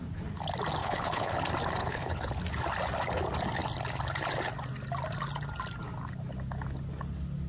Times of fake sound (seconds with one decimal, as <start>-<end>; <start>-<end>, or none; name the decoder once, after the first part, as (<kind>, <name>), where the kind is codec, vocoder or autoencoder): 0.8-1.4 (codec, HILCodec); 1.8-2.3